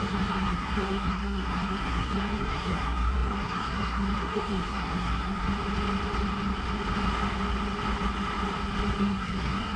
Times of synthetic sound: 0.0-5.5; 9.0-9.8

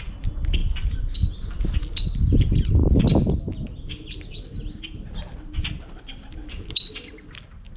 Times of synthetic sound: none

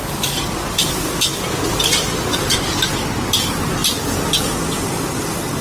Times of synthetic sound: 0.0-2.6

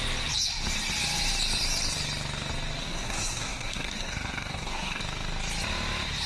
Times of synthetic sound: 2.8-5.0

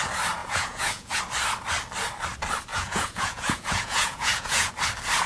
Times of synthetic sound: 0.4-1.2; 2.7-4.7

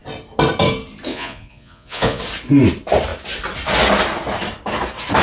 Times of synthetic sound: 1.1-2.2

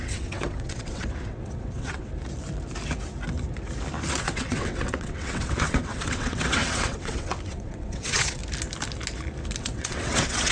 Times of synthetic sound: 0.0-2.1; 4.2-8.4; 9.6-10.5

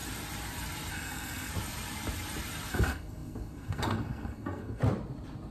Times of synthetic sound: 0.9-1.5; 2.7-4.8